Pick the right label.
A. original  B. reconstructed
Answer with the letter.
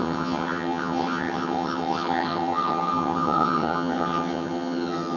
B